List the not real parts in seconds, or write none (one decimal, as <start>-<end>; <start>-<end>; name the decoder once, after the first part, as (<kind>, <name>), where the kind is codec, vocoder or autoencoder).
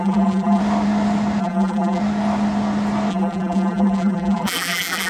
0.0-0.6 (vocoder, BigVGAN v2); 1.4-2.0; 3.1-5.1